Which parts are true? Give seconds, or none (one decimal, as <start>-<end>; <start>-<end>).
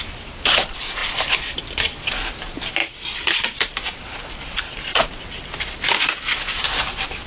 0.0-7.3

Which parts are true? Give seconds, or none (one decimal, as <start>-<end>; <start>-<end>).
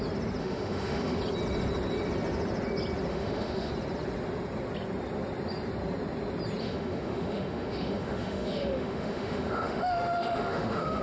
0.0-0.4; 1.2-3.1; 3.7-6.6